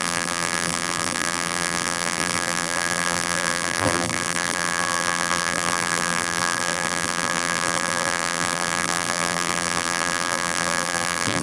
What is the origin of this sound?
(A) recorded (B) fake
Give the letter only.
B